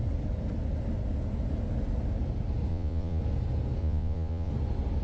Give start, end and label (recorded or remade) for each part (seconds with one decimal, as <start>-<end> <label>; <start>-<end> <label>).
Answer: 0.0-2.7 recorded; 2.7-3.2 remade; 3.2-3.8 recorded; 3.8-4.5 remade; 4.5-5.0 recorded